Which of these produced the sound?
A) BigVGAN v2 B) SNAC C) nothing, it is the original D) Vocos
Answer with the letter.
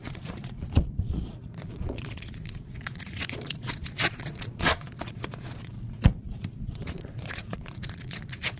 D